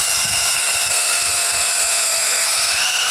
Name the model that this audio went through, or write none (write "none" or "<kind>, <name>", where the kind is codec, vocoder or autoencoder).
codec, SNAC